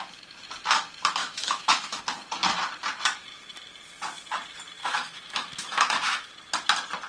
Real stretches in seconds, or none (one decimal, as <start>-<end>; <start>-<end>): 0.0-1.2; 2.0-4.8; 6.3-7.1